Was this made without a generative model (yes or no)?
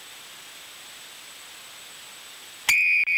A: yes